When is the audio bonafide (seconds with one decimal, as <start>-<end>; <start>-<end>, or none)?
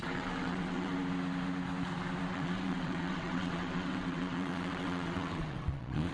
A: 0.9-2.3